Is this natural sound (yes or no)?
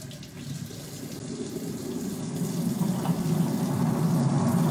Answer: yes